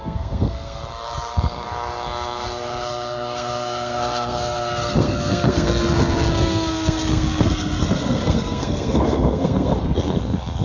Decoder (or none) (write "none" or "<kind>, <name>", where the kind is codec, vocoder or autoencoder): codec, SNAC